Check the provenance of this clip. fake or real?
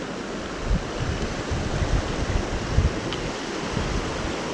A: real